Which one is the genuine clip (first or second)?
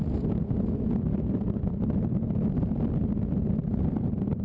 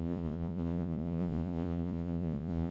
first